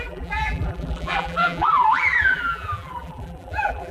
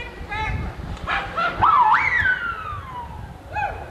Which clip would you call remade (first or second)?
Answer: first